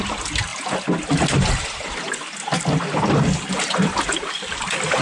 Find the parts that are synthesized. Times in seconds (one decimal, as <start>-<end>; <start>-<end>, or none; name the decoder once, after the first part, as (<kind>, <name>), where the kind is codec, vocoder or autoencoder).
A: none